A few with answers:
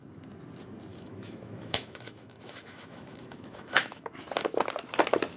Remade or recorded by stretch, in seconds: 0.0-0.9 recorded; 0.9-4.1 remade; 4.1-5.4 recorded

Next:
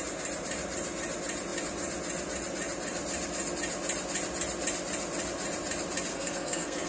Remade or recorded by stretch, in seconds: 0.0-6.1 recorded; 6.1-6.9 remade

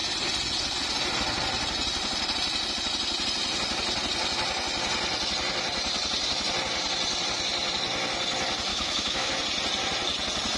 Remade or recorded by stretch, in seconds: 0.0-8.7 recorded; 8.7-9.3 remade; 9.3-10.6 recorded

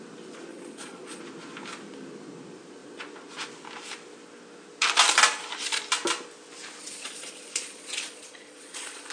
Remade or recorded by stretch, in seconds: 0.0-0.5 recorded; 0.5-1.2 remade; 1.2-6.8 recorded; 6.8-9.1 remade

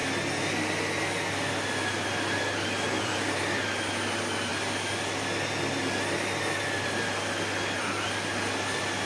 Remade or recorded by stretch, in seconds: 0.0-9.1 recorded

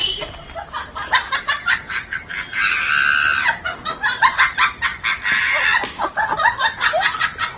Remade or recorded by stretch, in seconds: 0.0-7.6 recorded